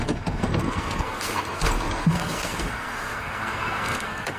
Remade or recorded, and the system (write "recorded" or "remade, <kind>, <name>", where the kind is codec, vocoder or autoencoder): remade, codec, SNAC